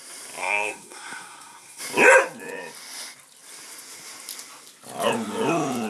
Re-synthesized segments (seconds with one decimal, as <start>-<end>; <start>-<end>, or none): 0.4-1.8